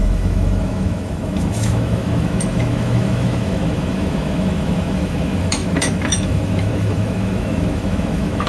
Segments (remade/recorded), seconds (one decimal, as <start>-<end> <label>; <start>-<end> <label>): 0.0-8.5 remade